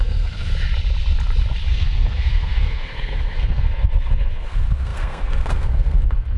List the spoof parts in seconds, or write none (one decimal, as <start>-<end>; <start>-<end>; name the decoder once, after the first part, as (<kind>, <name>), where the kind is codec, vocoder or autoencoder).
0.0-0.5 (codec, SNAC); 1.7-6.4